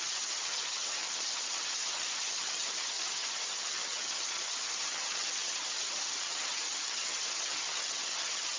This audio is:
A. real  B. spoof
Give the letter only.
B